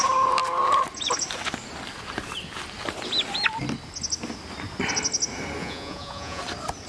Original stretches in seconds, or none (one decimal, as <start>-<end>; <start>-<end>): 0.0-5.6; 6.4-6.9